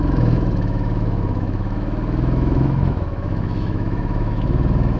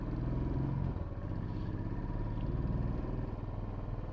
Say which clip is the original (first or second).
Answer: second